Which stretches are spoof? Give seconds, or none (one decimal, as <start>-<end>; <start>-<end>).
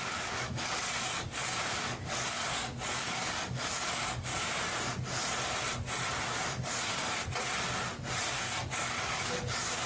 0.0-4.3; 6.5-7.2; 8.3-9.9